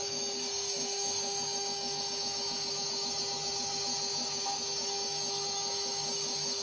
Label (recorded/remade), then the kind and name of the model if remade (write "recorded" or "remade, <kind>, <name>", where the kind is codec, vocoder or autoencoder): remade, autoencoder, DAC-VAE